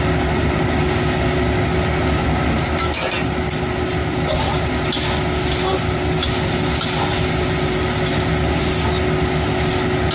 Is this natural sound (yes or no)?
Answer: yes